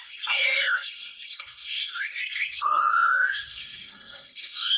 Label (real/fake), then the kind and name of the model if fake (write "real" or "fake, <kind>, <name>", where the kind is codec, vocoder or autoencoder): fake, codec, SNAC